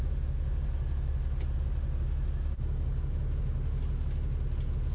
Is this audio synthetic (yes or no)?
no